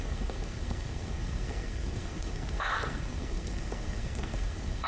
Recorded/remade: remade